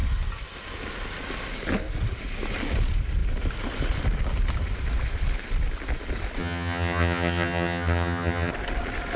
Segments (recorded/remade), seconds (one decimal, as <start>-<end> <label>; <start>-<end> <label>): 0.0-6.4 recorded; 6.4-8.5 remade; 8.5-9.2 recorded